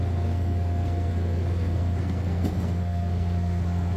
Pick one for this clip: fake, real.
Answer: fake